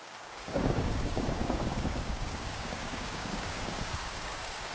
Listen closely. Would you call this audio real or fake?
fake